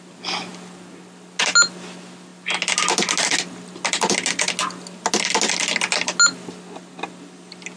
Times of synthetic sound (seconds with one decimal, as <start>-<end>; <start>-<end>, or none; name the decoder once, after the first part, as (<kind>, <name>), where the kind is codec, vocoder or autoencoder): none